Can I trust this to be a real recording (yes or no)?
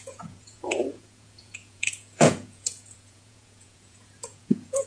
no